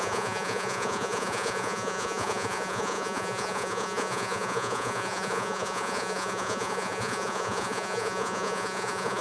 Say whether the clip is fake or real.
fake